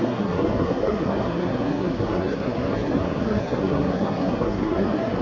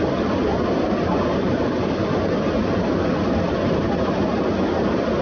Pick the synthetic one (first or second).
first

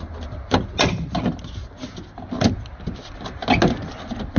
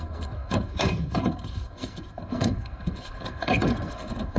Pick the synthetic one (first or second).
second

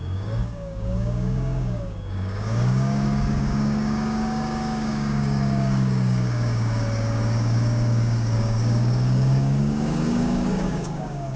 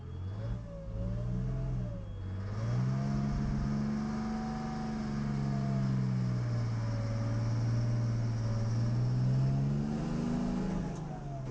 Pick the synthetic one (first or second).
first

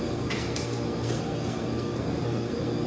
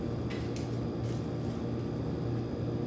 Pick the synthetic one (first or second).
first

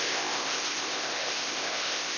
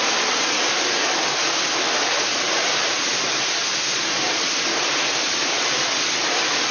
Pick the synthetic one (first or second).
first